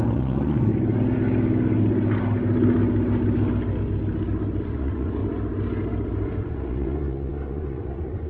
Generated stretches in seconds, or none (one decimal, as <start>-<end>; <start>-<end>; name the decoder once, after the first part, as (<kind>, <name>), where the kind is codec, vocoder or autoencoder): 0.0-0.7 (vocoder, Vocos); 4.6-5.2; 6.4-8.3